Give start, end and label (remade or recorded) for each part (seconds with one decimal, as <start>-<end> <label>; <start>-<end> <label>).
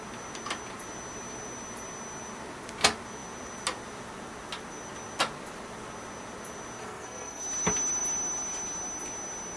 0.0-6.8 recorded; 6.8-7.4 remade; 7.4-9.6 recorded